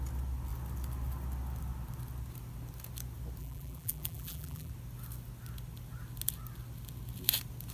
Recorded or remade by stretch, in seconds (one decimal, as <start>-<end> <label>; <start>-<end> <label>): 0.0-3.4 recorded; 3.4-4.7 remade; 4.7-7.7 recorded